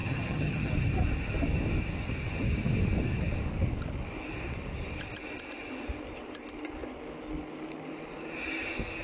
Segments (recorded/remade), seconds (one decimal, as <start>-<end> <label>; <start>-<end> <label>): 0.0-0.7 remade; 0.7-9.0 recorded